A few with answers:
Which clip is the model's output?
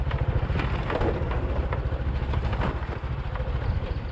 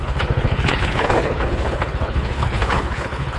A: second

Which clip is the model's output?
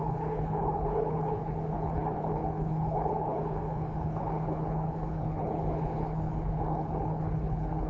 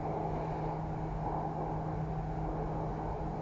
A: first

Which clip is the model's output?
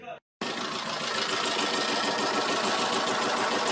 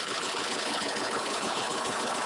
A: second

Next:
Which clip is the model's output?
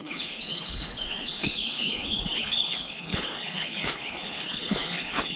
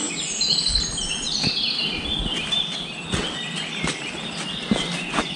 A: first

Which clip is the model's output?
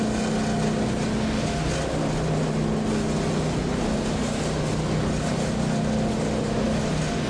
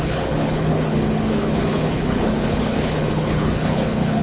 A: second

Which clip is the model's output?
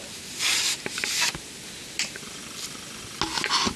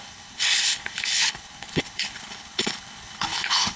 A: second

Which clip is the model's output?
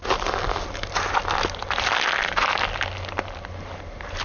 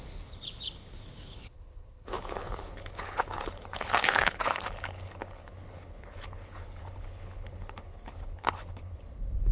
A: second